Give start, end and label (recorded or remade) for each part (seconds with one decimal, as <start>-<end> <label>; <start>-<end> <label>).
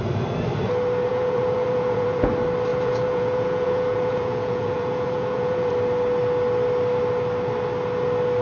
0.0-1.1 recorded; 1.1-2.3 remade; 2.3-2.7 recorded; 2.7-5.7 remade; 5.7-8.4 recorded